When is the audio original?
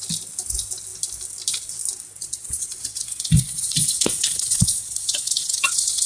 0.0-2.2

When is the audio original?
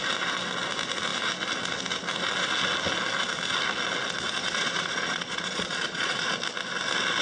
0.0-4.4; 6.2-7.2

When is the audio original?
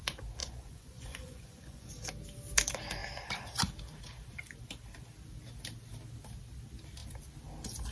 0.0-0.4; 1.9-7.9